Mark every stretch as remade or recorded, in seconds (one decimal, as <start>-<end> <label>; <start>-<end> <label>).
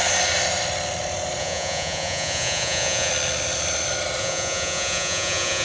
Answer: 0.0-1.4 recorded; 1.4-3.1 remade; 3.1-4.2 recorded; 4.2-5.6 remade